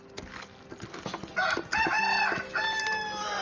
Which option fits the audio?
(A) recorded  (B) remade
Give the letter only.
A